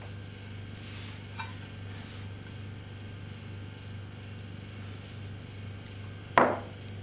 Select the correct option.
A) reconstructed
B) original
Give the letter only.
B